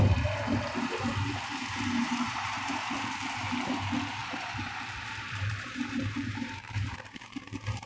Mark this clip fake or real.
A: fake